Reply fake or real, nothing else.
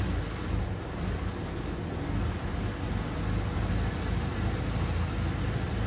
real